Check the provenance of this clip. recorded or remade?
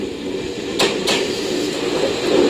recorded